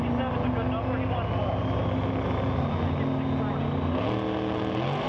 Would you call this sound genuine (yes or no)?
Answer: yes